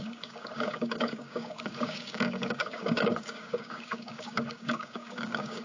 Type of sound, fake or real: fake